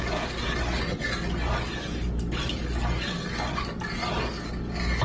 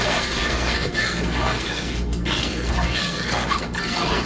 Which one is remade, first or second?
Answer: second